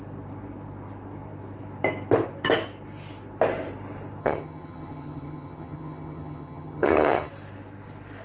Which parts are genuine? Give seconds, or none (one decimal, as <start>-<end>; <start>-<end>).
0.0-4.2; 7.3-8.2